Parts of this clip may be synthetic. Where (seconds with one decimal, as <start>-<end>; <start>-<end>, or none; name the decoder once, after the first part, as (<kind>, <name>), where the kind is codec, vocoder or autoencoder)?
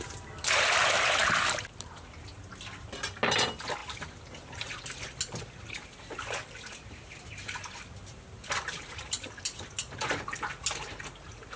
none